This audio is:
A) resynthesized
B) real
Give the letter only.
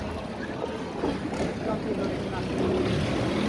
B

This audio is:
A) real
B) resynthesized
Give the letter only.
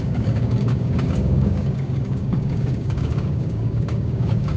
B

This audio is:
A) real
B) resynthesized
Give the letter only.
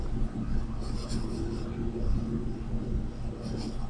A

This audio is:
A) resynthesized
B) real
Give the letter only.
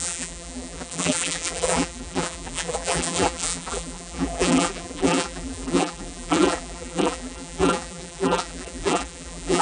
A